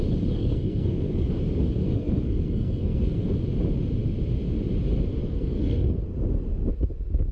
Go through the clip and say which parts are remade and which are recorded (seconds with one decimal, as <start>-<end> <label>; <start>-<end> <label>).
0.0-0.4 recorded; 0.4-1.3 remade; 1.3-1.8 recorded; 1.8-3.3 remade; 3.3-5.2 recorded; 5.2-6.0 remade; 6.0-7.3 recorded